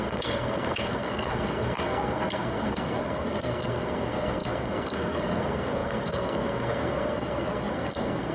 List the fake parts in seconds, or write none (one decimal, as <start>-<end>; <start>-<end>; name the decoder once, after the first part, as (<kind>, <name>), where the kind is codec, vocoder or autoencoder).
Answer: 0.0-8.3 (codec, SNAC)